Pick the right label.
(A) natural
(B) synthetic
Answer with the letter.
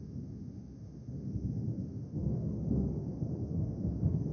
B